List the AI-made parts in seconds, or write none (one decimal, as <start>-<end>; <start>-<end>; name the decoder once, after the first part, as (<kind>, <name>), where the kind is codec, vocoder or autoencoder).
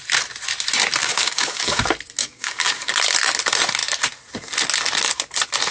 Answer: 1.0-1.8 (codec, DAC); 2.2-2.9